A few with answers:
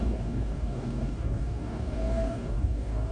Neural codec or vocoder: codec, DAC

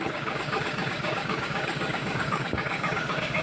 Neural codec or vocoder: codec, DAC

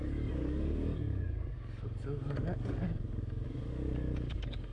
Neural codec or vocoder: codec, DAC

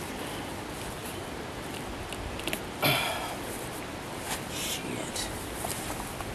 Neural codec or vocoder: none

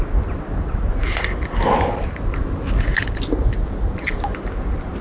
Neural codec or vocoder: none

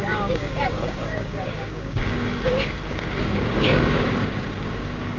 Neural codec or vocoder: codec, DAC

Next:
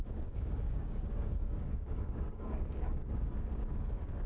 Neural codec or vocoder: codec, DAC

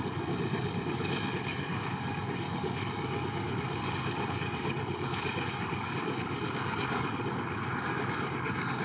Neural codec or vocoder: codec, DAC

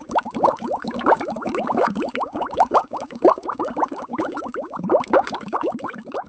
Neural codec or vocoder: codec, DAC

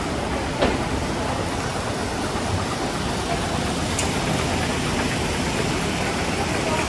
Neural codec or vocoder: none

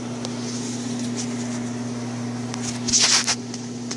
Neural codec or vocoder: none